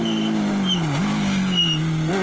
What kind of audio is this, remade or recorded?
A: recorded